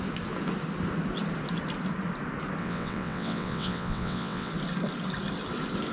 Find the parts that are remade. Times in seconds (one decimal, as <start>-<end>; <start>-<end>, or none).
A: 2.6-4.5